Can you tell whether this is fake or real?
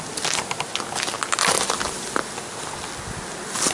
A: real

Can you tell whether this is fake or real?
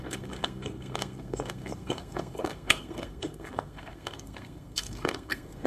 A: fake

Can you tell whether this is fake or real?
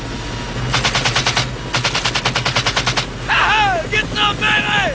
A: real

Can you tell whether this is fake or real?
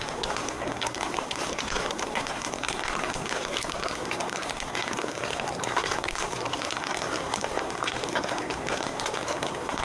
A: fake